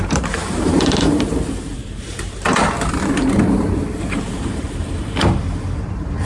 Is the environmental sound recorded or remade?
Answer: remade